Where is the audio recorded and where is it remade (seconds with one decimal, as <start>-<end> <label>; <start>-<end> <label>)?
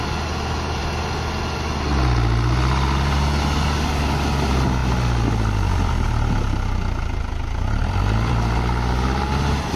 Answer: 0.0-4.8 recorded; 4.8-5.9 remade; 5.9-7.8 recorded; 7.8-9.2 remade; 9.2-9.8 recorded